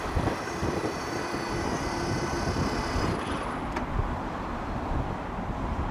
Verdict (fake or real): fake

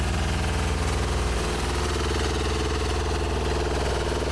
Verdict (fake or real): real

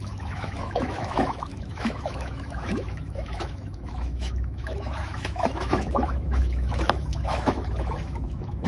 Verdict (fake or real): fake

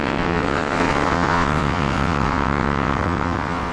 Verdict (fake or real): fake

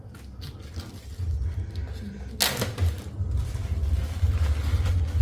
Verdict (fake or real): real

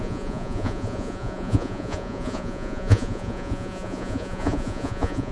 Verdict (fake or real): fake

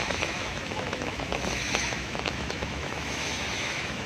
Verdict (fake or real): fake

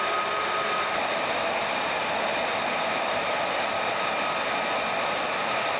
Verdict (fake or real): real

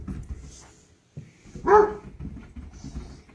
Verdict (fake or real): real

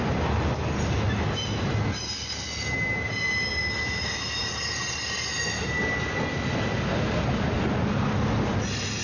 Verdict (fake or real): real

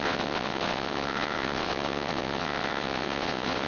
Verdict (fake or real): fake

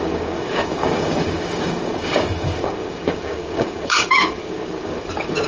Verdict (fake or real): fake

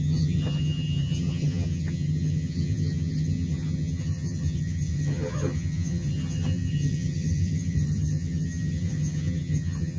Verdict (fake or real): fake